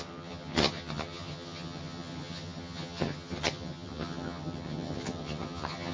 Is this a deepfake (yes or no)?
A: yes